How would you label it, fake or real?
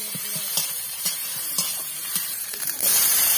fake